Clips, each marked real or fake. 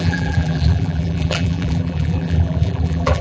fake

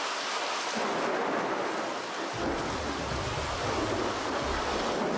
real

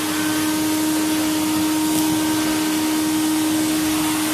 real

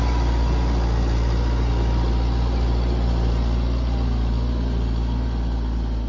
real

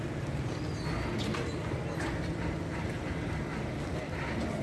real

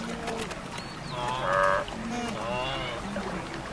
real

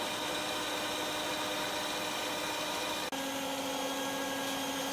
real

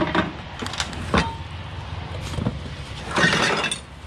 real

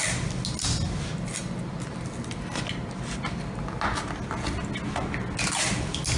real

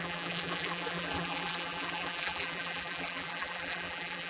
fake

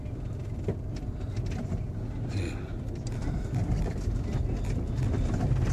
real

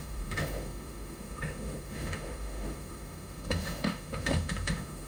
fake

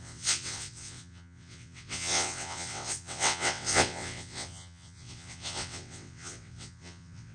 fake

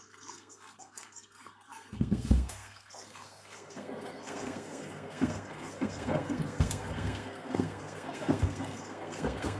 fake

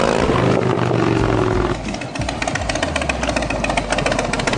real